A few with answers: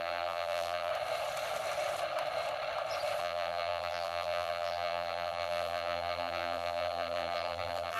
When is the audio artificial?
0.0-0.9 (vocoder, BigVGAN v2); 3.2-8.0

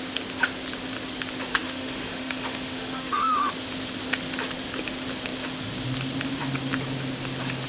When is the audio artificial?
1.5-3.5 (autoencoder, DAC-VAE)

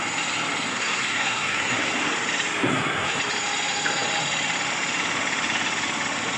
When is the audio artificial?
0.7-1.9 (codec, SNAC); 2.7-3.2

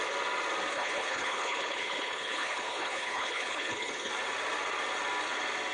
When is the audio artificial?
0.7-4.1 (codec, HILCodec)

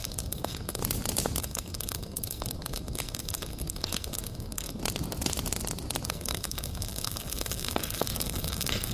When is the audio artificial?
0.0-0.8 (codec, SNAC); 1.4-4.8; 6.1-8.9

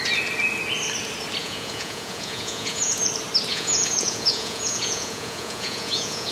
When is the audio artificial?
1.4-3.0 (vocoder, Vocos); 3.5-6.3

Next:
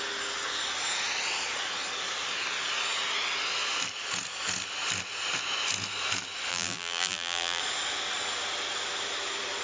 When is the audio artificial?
6.5-7.6 (vocoder, BigVGAN v2)

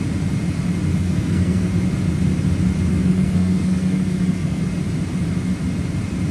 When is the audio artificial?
0.9-1.7 (codec, SNAC); 2.9-4.6